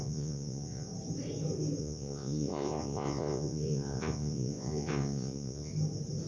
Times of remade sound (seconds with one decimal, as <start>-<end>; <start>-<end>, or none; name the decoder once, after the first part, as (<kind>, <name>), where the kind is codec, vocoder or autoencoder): 0.0-0.9 (vocoder, Vocos); 1.8-5.7